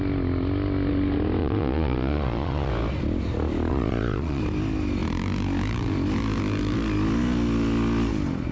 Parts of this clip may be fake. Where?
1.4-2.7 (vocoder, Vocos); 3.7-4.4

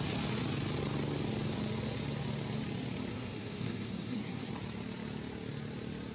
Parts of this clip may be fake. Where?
3.1-4.5 (codec, SNAC)

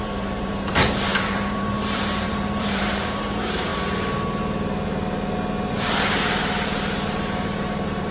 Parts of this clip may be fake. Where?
0.0-3.7 (vocoder, BigVGAN v2); 5.7-8.1

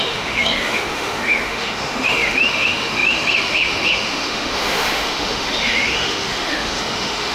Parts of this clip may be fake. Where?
0.0-7.3 (autoencoder, DAC-VAE)